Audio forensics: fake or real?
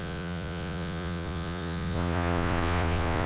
fake